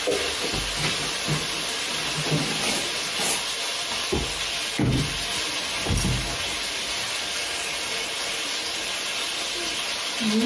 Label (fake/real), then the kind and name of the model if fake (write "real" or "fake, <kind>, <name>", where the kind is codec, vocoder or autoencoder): real